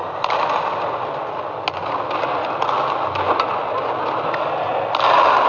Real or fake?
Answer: real